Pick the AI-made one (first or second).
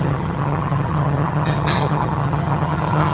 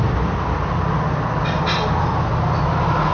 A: first